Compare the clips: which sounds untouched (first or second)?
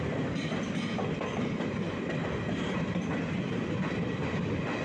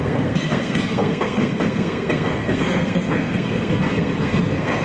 first